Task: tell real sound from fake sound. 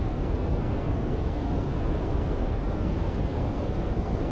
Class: fake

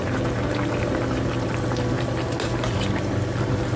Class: real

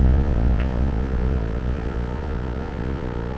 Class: fake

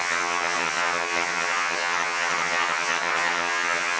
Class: fake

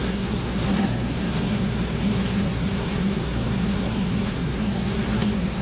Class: fake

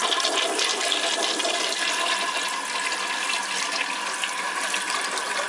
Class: real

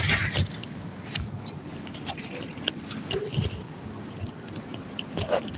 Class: real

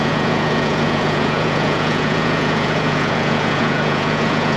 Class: fake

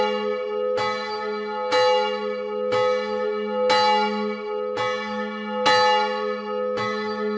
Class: real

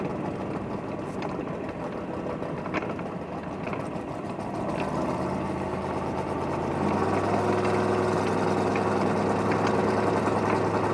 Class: real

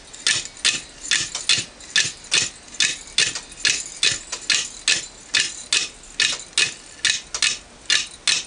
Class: real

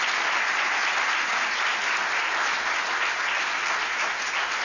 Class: real